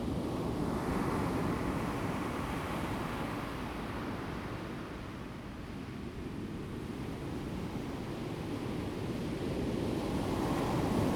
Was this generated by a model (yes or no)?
no